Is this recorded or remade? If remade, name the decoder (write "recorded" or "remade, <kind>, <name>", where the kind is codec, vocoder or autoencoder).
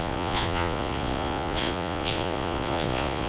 remade, vocoder, Vocos